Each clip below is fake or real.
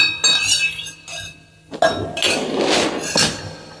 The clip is real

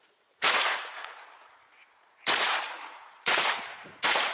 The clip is fake